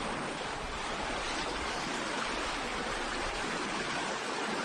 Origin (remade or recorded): recorded